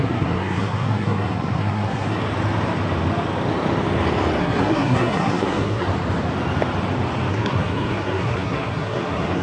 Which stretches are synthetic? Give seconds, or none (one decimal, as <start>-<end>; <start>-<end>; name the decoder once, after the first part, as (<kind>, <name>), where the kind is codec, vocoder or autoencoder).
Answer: 0.0-2.2 (codec, SNAC); 4.4-5.9; 7.3-9.4